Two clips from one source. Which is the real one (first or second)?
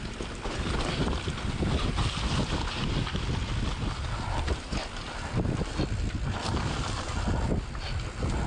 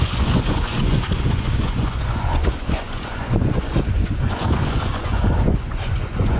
first